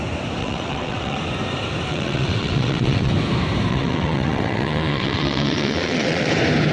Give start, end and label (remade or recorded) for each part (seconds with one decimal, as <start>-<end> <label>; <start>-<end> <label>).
0.0-0.4 recorded; 0.4-1.2 remade; 1.2-1.9 recorded; 1.9-3.1 remade; 3.1-3.7 recorded; 3.7-6.3 remade; 6.3-6.7 recorded